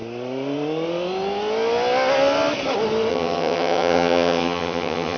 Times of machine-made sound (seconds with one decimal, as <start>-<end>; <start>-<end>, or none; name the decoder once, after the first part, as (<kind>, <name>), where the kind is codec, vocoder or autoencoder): 3.1-5.2 (vocoder, HiFi-GAN)